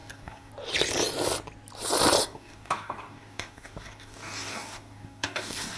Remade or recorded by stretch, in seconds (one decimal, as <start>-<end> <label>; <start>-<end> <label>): 0.0-0.5 remade; 0.5-2.2 recorded; 2.2-5.8 remade